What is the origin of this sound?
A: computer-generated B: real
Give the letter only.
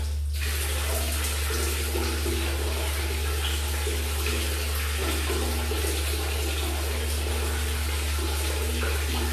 B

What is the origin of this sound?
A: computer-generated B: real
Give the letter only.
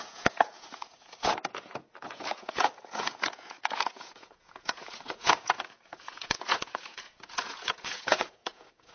A